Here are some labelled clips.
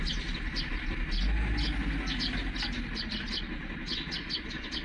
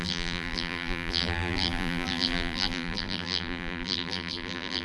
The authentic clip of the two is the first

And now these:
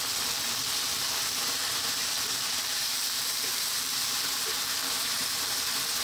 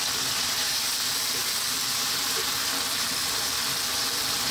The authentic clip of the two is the second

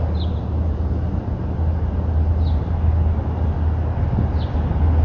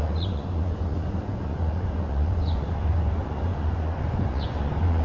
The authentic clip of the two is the first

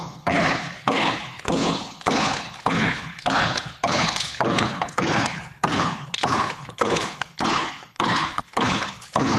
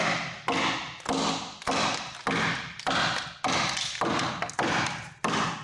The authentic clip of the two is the second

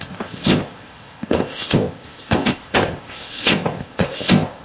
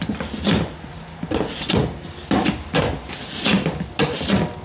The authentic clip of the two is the second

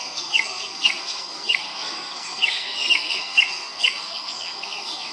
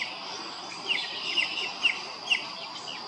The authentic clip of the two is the second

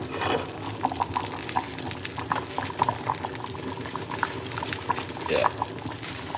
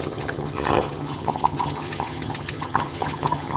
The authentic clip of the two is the first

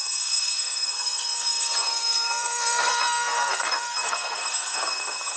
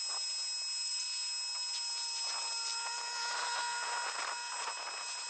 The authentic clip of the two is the second